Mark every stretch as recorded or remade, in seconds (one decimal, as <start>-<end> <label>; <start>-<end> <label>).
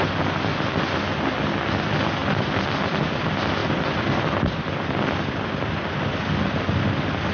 0.0-3.6 recorded; 3.6-5.9 remade; 5.9-6.4 recorded; 6.4-7.3 remade